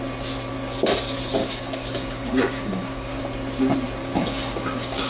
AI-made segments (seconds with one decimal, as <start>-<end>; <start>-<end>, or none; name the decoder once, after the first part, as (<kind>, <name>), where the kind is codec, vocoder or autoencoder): 1.4-3.2 (codec, DAC); 4.0-5.1